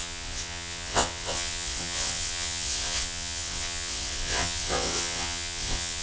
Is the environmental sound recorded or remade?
remade